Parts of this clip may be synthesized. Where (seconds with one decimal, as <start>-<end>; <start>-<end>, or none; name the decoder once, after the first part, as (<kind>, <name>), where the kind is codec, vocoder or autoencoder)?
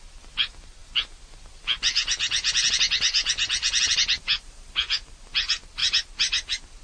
none